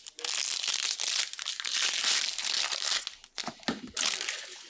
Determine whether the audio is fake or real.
real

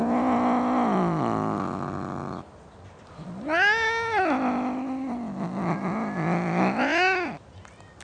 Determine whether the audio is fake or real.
real